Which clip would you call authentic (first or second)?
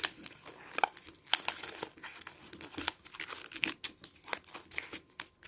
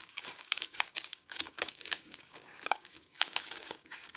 first